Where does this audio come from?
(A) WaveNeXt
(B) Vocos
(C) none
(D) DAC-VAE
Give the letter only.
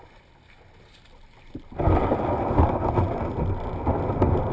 C